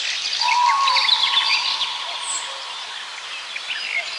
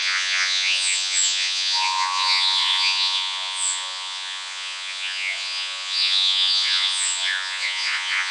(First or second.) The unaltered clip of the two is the first